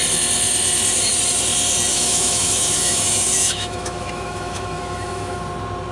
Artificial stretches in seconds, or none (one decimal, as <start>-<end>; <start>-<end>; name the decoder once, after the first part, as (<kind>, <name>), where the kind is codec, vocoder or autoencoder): 1.9-5.4 (autoencoder, DAC-VAE)